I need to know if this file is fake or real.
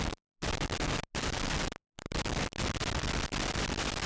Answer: real